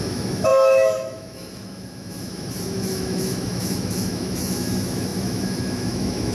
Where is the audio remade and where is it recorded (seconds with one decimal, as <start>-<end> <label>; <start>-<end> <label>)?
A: 0.0-6.3 remade